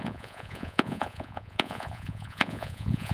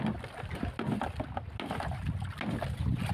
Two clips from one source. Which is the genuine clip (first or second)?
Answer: second